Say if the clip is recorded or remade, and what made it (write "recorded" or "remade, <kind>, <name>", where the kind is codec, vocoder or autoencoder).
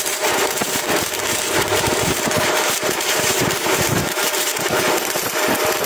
remade, vocoder, BigVGAN v2